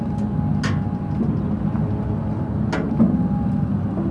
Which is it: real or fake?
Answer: real